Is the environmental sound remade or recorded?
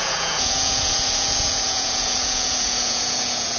remade